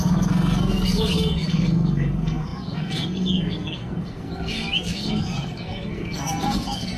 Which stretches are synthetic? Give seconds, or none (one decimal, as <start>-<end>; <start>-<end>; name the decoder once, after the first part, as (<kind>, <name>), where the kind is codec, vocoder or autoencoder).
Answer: 0.0-7.0 (codec, SNAC)